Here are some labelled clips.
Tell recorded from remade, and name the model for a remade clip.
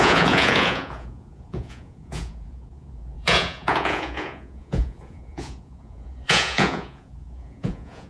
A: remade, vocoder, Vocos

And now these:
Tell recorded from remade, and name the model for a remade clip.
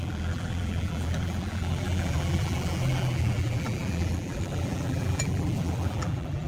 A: remade, vocoder, BigVGAN v2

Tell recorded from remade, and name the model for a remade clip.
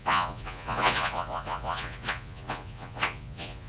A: remade, vocoder, Vocos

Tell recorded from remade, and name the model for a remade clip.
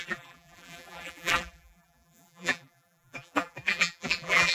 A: remade, vocoder, BigVGAN v2